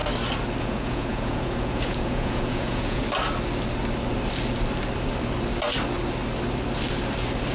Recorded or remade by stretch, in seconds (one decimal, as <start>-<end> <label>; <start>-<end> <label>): 0.0-0.6 recorded; 0.6-3.0 remade; 3.0-7.5 recorded